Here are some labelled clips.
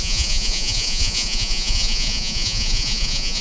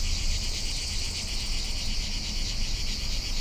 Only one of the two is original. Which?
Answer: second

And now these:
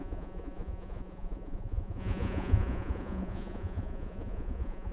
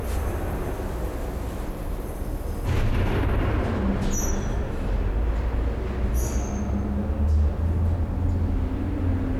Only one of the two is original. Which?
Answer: second